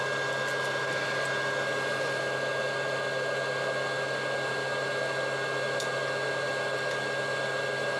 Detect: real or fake real